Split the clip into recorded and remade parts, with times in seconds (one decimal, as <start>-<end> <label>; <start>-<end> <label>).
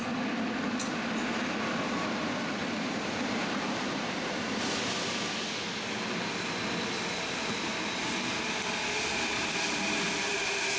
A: 0.0-2.6 recorded; 2.6-4.1 remade; 4.1-10.8 recorded